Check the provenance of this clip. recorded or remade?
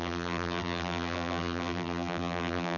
remade